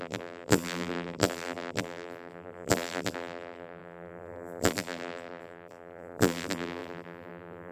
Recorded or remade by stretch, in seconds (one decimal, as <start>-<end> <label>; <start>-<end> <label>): 0.0-7.7 remade